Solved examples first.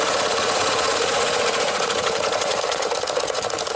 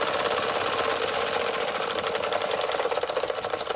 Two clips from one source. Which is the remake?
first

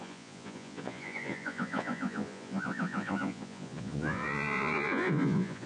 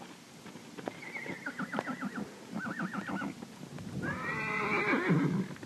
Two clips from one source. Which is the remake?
first